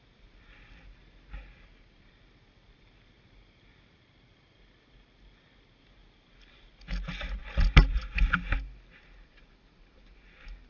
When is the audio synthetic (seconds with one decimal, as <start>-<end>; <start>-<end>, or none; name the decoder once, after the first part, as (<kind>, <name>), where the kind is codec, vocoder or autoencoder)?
none